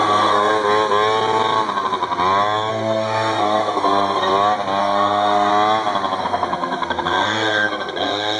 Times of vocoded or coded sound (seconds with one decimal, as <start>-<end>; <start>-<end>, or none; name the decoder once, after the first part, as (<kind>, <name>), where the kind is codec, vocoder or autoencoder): 0.0-0.5 (codec, SNAC); 2.7-4.3; 4.8-5.5; 6.2-8.4